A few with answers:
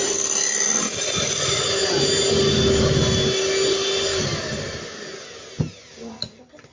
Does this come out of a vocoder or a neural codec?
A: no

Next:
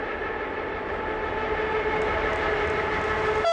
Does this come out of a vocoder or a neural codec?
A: no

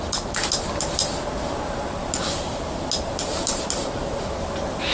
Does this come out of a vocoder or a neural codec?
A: no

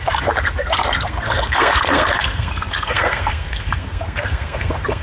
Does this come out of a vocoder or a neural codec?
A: yes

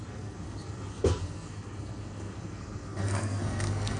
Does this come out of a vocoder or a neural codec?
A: yes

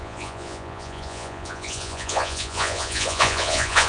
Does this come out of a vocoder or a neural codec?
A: yes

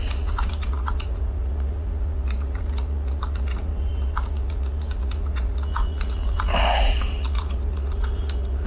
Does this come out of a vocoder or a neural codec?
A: yes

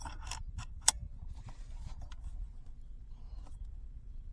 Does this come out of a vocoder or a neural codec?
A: yes